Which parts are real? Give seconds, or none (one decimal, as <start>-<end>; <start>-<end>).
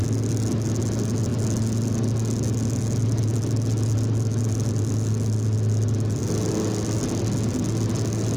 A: 0.0-8.4